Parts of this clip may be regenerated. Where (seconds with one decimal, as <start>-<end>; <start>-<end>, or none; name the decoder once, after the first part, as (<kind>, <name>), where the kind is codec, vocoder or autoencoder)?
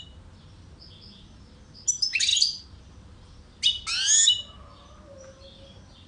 none